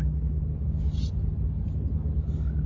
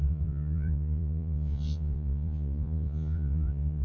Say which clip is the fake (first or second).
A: second